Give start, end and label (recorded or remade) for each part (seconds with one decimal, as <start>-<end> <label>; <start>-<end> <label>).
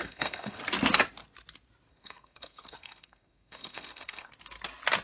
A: 0.0-0.6 remade; 0.6-1.9 recorded; 1.9-4.3 remade; 4.3-5.0 recorded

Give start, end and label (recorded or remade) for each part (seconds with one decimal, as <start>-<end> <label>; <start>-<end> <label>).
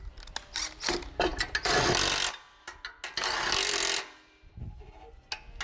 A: 0.0-5.6 recorded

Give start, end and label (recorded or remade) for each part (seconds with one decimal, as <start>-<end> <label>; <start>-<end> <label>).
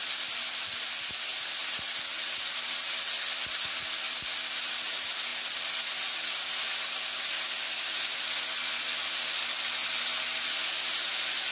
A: 0.0-11.5 recorded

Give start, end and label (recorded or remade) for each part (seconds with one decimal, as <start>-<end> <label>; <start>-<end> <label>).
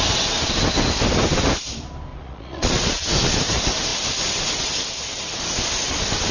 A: 0.0-2.1 recorded; 2.1-3.0 remade; 3.0-6.3 recorded